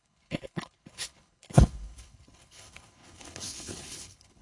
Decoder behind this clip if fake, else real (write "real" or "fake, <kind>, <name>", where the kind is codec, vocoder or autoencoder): fake, codec, HILCodec